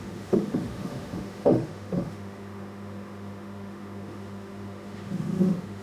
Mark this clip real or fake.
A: fake